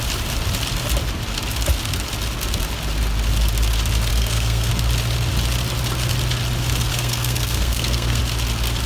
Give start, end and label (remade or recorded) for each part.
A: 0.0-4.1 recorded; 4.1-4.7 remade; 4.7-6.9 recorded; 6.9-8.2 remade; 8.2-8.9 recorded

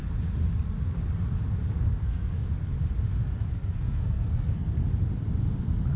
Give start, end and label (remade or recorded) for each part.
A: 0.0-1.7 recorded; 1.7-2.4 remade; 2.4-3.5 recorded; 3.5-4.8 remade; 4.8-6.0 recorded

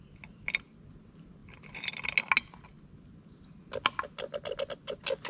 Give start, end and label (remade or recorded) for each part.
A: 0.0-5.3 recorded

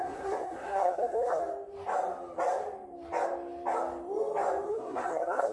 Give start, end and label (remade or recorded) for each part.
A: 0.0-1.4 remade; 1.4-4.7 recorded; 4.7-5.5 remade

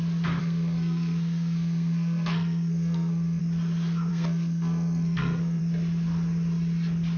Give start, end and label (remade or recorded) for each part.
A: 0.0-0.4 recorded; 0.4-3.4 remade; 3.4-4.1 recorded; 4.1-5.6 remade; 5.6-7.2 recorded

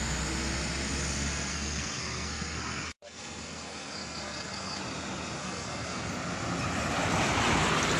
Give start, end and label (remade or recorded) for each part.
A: 0.0-1.5 recorded; 1.5-4.8 remade; 4.8-5.4 recorded; 5.4-6.1 remade; 6.1-8.0 recorded

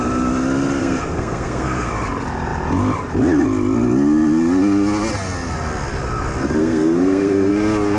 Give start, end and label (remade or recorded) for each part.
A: 0.0-0.8 recorded; 0.8-1.9 remade; 1.9-6.6 recorded; 6.6-7.5 remade; 7.5-8.0 recorded

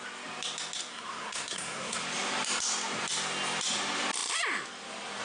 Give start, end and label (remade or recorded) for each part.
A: 0.0-0.9 recorded; 0.9-2.0 remade; 2.0-5.2 recorded